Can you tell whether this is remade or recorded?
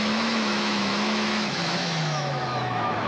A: remade